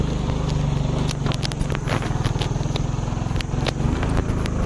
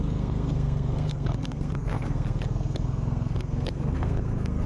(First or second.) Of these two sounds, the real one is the first